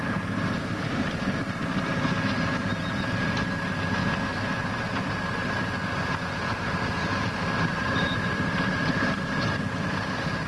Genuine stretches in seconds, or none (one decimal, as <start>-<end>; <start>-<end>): 0.0-10.5